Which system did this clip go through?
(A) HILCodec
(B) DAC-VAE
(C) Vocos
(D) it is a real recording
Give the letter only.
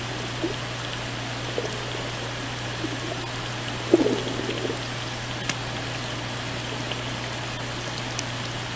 D